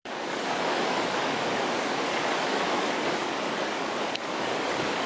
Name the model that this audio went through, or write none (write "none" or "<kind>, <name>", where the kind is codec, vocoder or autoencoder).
codec, DAC